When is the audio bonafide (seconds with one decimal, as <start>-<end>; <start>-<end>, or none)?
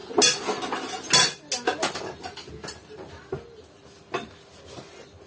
0.0-5.3